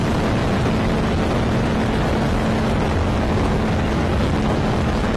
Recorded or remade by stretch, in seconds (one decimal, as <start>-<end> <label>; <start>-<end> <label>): 0.0-3.0 recorded; 3.0-5.2 remade